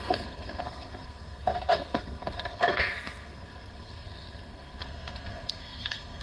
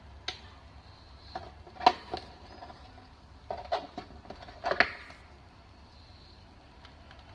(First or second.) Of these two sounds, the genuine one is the second